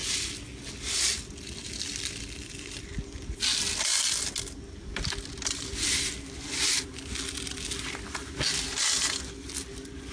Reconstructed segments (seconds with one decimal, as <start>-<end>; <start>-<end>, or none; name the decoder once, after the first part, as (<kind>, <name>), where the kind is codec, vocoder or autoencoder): none